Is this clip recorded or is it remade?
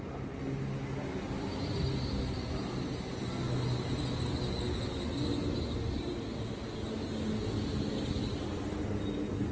recorded